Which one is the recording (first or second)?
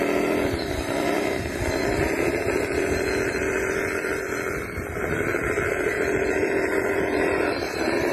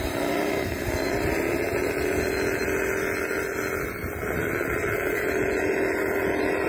second